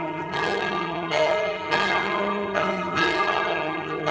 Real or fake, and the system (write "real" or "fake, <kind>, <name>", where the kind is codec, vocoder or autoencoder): fake, vocoder, HiFi-GAN